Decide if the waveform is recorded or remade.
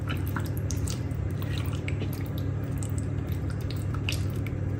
remade